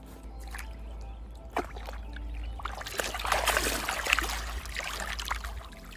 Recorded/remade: recorded